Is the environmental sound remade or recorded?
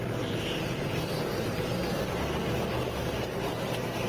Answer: recorded